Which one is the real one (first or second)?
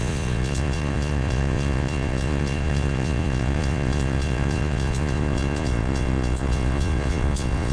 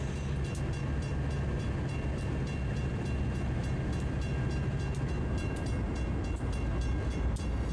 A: second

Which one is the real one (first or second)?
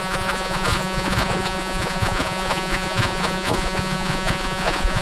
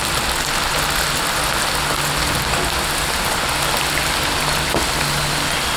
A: second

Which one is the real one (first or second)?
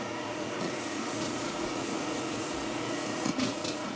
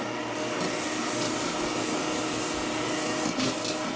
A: second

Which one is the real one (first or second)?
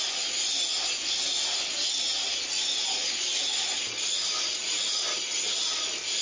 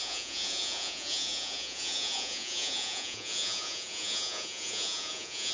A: first